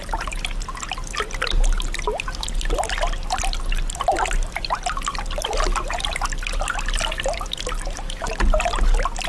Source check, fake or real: real